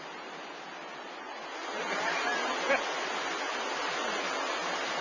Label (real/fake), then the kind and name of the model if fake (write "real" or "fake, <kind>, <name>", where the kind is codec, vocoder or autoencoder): real